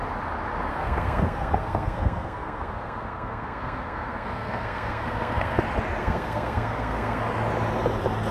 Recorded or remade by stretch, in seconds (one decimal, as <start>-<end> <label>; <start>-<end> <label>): 0.0-0.7 recorded; 0.7-5.6 remade; 5.6-6.0 recorded; 6.0-7.2 remade; 7.2-8.3 recorded